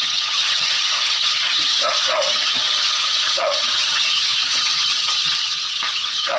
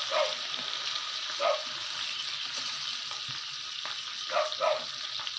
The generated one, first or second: first